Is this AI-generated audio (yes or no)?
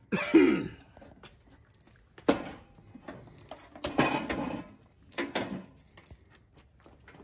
no